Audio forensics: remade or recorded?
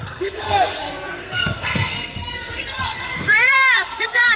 remade